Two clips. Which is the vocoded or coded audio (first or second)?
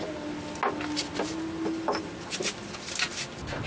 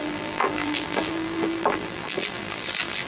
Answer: second